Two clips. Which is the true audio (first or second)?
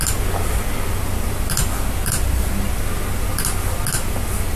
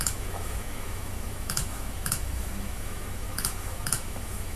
first